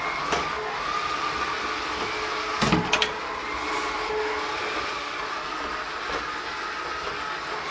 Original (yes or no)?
yes